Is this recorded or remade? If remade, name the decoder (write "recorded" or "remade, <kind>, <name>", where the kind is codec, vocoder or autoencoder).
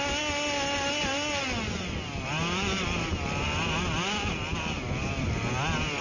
recorded